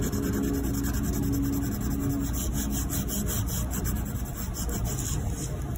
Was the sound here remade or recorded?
recorded